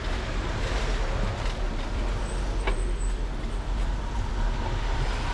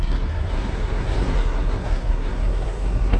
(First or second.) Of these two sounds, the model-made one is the second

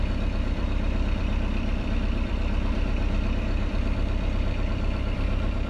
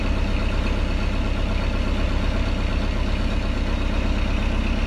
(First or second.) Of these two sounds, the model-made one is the first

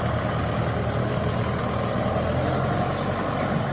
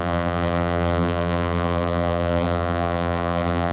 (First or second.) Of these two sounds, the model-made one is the second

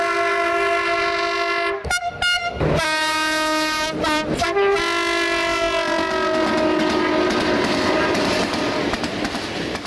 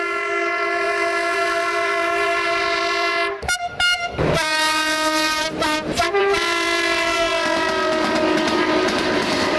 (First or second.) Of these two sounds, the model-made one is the second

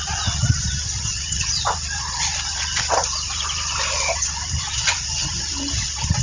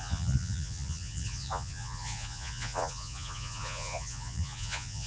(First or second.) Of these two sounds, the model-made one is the second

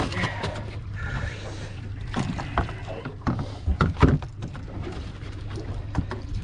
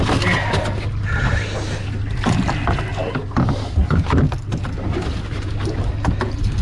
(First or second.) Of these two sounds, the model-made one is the first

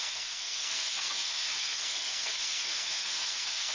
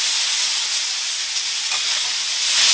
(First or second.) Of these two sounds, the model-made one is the first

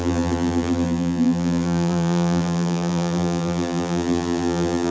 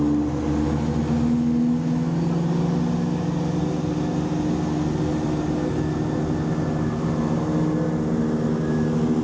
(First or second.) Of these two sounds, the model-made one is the first